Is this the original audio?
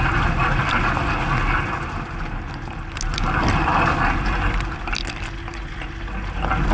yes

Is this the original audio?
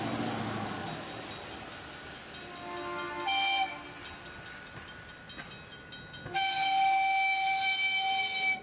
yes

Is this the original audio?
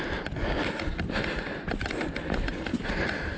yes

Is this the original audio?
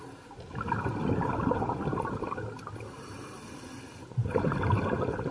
yes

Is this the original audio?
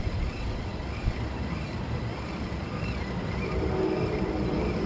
yes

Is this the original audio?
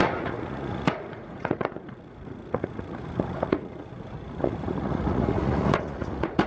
no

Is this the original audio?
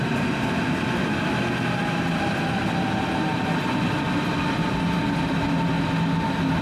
yes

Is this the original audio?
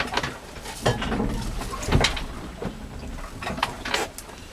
yes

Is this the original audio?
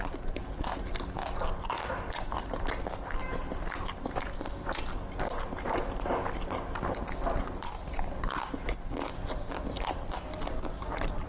yes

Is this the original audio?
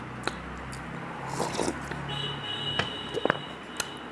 yes